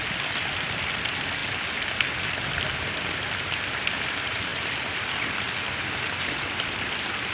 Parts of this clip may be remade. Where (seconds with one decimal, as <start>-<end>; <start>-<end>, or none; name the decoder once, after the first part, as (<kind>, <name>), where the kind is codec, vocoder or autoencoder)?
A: none